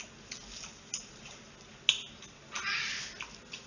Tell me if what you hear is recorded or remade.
recorded